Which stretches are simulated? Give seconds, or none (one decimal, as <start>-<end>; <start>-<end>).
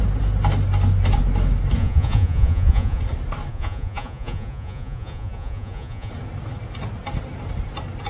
1.8-3.0; 3.5-6.1